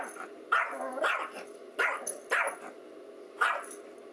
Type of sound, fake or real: real